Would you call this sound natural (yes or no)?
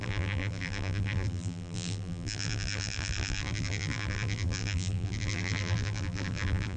no